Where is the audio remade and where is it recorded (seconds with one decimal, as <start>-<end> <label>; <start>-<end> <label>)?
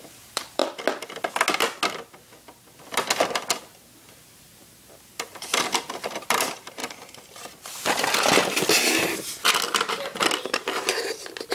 0.0-0.6 remade; 0.6-4.1 recorded; 4.1-6.8 remade; 6.8-10.5 recorded; 10.5-11.5 remade